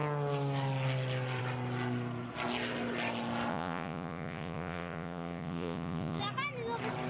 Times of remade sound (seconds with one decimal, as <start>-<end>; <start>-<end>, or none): 3.5-6.2